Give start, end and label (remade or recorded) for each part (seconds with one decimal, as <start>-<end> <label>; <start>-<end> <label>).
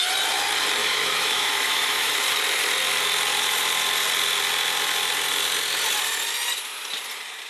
0.0-0.8 recorded; 0.8-2.1 remade; 2.1-7.5 recorded